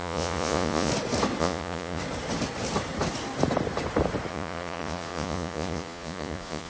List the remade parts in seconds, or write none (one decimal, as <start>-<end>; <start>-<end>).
0.0-0.9; 1.4-2.0; 4.3-6.7